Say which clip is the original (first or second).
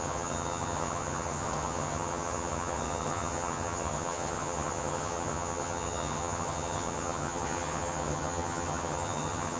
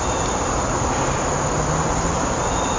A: second